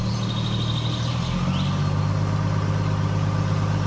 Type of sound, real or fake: real